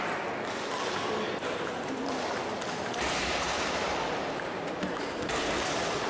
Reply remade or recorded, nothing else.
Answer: recorded